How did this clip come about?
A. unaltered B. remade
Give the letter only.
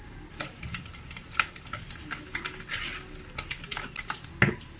A